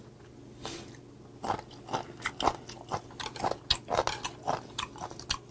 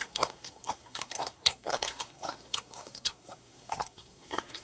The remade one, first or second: second